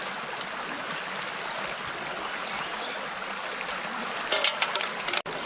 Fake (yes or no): no